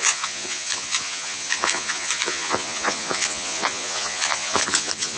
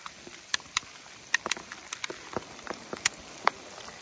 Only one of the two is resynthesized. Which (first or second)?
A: first